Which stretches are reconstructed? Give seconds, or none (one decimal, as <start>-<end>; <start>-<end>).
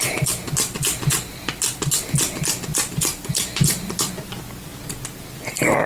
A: 2.7-4.1